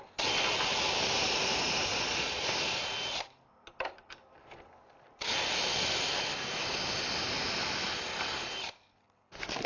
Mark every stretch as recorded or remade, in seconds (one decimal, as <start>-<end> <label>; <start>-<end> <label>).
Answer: 0.0-1.9 recorded; 1.9-2.5 remade; 2.5-9.7 recorded

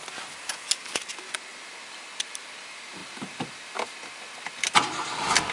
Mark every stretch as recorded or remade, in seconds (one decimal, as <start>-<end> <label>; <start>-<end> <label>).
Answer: 0.0-5.5 recorded